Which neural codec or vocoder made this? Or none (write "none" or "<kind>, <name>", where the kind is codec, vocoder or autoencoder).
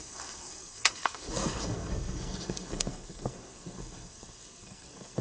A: codec, SNAC